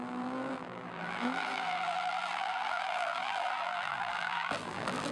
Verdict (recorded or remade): remade